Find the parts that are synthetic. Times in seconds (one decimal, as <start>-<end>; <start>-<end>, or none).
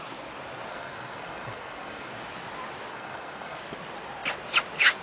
0.7-2.1; 2.9-3.6